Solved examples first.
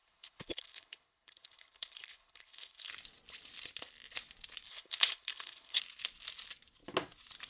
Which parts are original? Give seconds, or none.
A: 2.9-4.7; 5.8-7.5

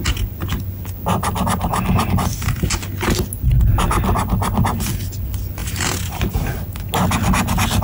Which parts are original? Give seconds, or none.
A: 0.0-5.6; 6.2-7.8

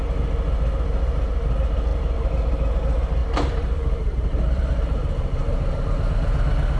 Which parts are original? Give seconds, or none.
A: 0.0-3.2; 4.7-6.8

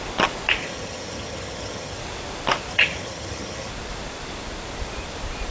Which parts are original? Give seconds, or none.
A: 0.0-0.6; 2.0-2.7; 3.7-5.5

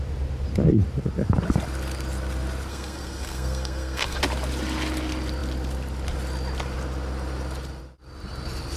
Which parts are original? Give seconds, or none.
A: 0.0-2.7; 4.2-8.8

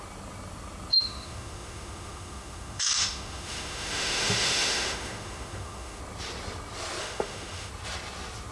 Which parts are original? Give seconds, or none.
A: 0.0-0.9; 6.0-7.0; 7.7-8.5

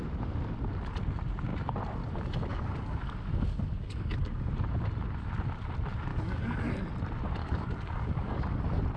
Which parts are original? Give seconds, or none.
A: 0.0-2.5; 4.5-6.1; 6.7-7.4; 8.6-9.0

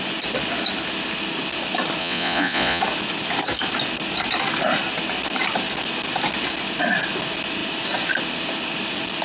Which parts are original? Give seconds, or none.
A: 0.0-2.0; 2.8-9.2